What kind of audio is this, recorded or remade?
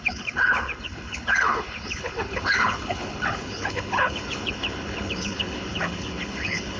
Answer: remade